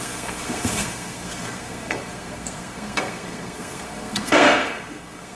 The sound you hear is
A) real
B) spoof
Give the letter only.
B